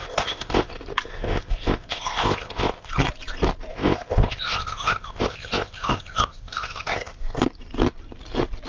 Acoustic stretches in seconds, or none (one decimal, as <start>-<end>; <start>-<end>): 0.7-1.1; 2.9-3.7; 7.4-8.7